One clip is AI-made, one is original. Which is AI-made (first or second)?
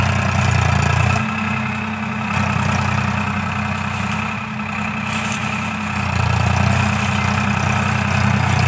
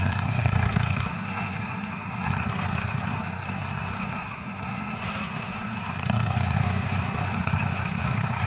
second